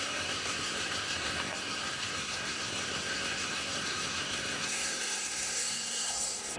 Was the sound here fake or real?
fake